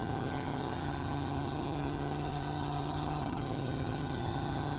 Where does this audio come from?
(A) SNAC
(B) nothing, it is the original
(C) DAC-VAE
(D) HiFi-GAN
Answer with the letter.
D